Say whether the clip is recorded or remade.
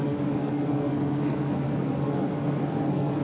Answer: remade